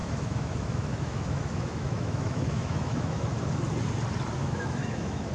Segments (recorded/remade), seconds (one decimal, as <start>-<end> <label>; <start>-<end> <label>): 0.0-3.2 remade; 3.2-4.4 recorded; 4.4-5.3 remade